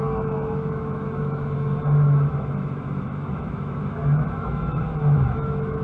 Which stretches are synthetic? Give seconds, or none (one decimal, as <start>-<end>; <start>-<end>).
0.0-5.8